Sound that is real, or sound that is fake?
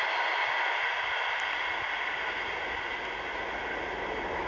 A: real